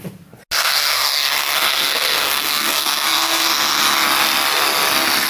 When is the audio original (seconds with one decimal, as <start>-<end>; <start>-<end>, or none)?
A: 0.0-0.6; 3.8-5.3